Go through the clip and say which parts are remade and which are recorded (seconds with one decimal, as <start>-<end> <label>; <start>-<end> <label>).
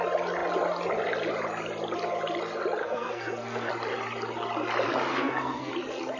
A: 0.0-2.8 recorded; 2.8-3.7 remade; 3.7-5.1 recorded; 5.1-5.7 remade; 5.7-6.2 recorded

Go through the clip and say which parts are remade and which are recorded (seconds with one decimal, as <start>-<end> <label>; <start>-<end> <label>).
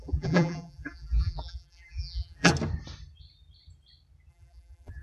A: 0.0-2.5 remade; 2.5-4.3 recorded; 4.3-5.0 remade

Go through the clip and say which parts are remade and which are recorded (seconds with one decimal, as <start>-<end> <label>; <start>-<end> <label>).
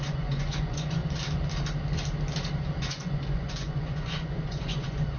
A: 0.0-1.0 remade; 1.0-2.8 recorded; 2.8-5.2 remade